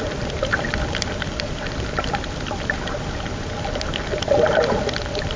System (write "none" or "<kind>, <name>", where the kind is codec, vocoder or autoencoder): none